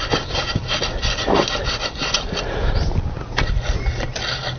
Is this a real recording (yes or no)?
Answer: yes